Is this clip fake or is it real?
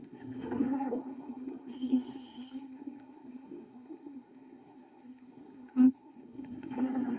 fake